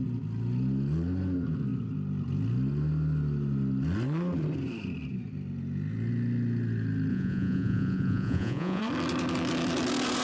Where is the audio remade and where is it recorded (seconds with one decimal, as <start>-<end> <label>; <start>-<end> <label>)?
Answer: 0.0-7.1 recorded; 7.1-8.8 remade; 8.8-10.2 recorded